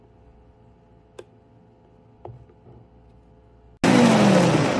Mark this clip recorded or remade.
recorded